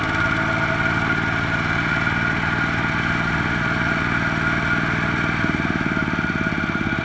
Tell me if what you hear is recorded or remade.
recorded